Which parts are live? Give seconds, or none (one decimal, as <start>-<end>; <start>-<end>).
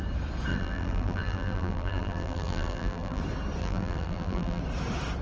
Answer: 0.0-0.5; 3.2-3.6; 4.6-5.2